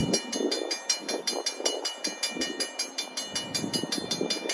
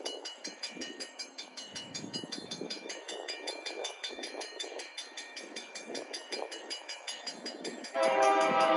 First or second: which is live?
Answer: first